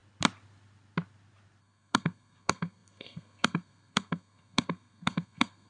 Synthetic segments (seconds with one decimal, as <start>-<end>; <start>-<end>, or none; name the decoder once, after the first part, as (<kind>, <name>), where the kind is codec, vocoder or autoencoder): 1.6-5.7 (codec, SNAC)